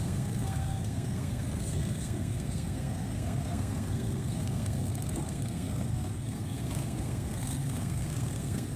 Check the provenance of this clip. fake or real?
fake